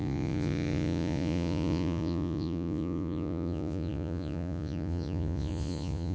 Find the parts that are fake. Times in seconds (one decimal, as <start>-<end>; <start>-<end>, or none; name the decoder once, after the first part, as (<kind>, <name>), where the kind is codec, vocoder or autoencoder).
0.0-6.1 (vocoder, Vocos)

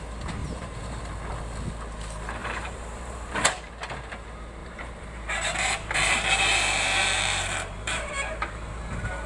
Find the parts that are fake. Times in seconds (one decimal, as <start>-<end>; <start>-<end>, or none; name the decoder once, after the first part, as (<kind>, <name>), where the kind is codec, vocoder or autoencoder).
0.4-1.0 (vocoder, BigVGAN v2); 2.4-3.7; 4.6-8.8

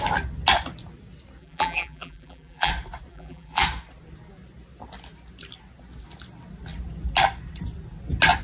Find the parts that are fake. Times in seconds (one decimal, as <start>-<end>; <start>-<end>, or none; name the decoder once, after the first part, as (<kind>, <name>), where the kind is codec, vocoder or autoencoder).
1.4-2.7 (vocoder, BigVGAN v2); 3.1-3.6

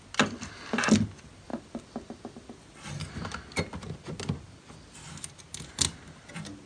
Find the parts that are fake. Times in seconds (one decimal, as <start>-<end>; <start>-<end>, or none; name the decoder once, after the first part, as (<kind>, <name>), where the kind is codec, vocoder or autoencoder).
none

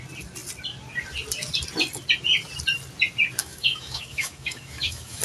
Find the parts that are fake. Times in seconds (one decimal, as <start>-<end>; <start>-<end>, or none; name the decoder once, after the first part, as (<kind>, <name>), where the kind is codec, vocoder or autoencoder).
3.4-5.2 (autoencoder, DAC-VAE)

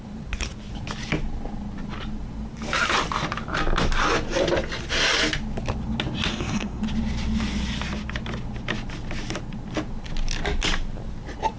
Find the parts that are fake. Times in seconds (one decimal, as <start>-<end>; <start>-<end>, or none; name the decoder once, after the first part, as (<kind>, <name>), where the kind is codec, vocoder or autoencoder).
6.3-6.8 (codec, SNAC)